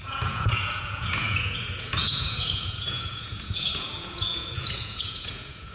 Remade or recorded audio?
remade